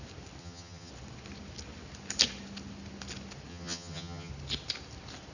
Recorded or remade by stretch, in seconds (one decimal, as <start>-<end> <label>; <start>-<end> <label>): 0.0-0.4 recorded; 0.4-0.9 remade; 0.9-3.5 recorded; 3.5-4.3 remade; 4.3-5.3 recorded